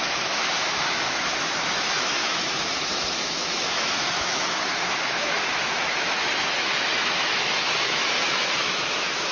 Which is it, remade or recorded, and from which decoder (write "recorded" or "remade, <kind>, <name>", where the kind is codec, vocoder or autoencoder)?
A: remade, autoencoder, DAC-VAE